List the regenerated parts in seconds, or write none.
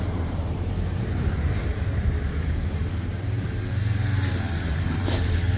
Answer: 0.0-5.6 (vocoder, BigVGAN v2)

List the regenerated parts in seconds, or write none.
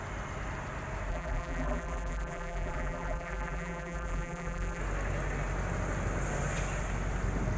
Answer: 1.1-4.8 (vocoder, BigVGAN v2)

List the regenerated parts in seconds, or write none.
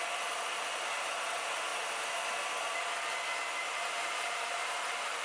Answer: 3.5-5.2 (vocoder, BigVGAN v2)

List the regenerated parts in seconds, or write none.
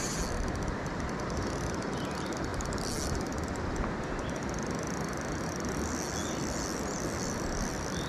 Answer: none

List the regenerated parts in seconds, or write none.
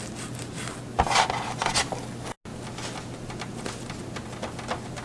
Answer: none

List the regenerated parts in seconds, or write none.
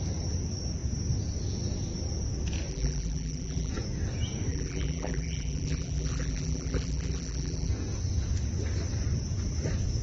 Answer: 2.7-3.7 (vocoder, BigVGAN v2); 4.5-7.7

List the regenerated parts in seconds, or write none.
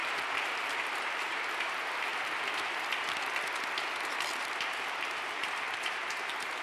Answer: 0.0-2.1 (vocoder, BigVGAN v2); 4.6-6.6